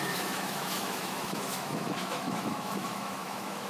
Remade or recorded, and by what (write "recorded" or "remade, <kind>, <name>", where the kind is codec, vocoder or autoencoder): remade, autoencoder, DAC-VAE